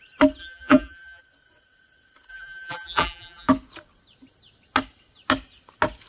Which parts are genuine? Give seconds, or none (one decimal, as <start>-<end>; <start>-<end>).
0.0-0.4; 1.2-2.3; 3.5-6.1